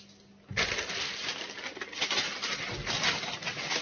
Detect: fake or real real